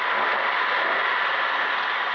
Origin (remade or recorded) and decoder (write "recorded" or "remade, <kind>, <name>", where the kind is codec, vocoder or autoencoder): recorded